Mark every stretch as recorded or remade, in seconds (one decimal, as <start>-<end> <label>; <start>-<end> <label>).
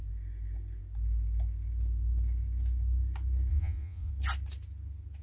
0.0-3.5 recorded; 3.5-4.1 remade; 4.1-5.2 recorded